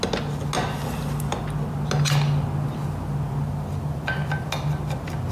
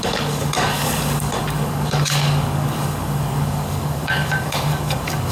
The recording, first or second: first